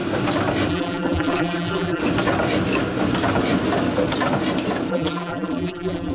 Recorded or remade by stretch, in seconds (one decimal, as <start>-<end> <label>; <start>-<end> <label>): 0.0-0.7 recorded; 0.7-2.0 remade; 2.0-4.9 recorded; 4.9-6.1 remade